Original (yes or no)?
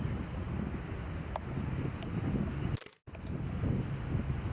yes